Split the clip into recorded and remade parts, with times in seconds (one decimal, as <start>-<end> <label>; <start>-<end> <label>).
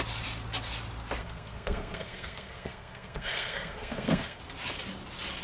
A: 0.0-1.2 recorded; 1.2-4.4 remade; 4.4-5.4 recorded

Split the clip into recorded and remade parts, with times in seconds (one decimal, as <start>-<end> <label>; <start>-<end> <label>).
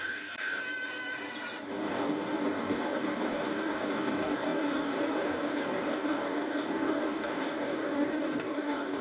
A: 0.0-0.6 remade; 0.6-1.7 recorded; 1.7-9.0 remade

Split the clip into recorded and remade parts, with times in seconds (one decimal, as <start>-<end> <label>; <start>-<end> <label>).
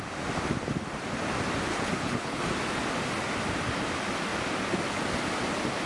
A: 0.0-1.7 recorded; 1.7-2.4 remade; 2.4-5.9 recorded